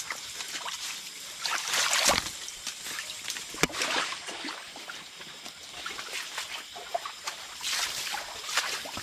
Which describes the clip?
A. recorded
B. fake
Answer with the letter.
A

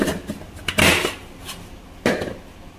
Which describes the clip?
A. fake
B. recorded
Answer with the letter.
B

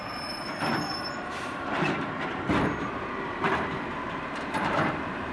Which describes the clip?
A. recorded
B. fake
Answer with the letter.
B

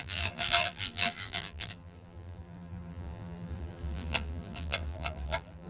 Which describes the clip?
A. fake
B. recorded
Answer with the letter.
A